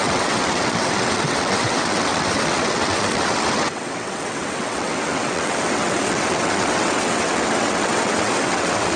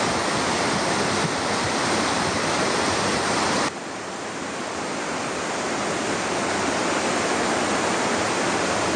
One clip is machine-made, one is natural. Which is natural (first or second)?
second